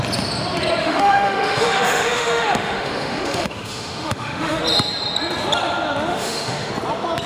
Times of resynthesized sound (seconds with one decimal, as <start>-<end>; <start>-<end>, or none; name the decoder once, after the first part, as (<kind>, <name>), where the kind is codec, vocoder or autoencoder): 0.8-4.6 (autoencoder, DAC-VAE); 6.1-6.7